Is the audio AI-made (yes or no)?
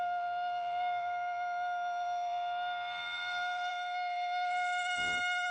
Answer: yes